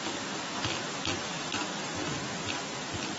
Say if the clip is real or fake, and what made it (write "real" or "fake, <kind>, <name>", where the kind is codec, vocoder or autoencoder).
real